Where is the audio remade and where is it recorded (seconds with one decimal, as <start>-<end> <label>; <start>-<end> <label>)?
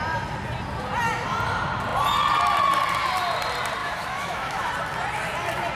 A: 0.0-3.8 recorded; 3.8-4.7 remade; 4.7-5.7 recorded